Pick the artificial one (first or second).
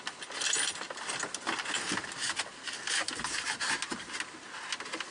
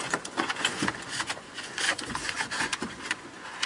second